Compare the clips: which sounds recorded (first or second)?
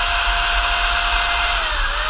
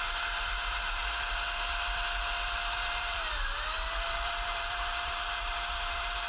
first